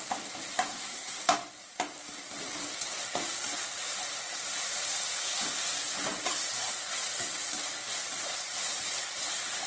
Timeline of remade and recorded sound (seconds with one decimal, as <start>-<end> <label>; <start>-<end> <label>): 0.0-0.7 recorded; 0.7-1.2 remade; 1.2-9.7 recorded